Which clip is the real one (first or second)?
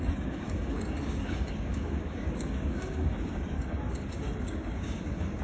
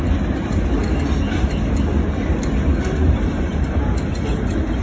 second